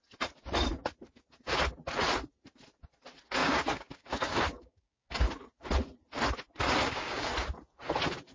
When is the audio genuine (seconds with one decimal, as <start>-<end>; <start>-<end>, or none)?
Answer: 0.0-3.4; 5.3-6.8; 7.3-8.3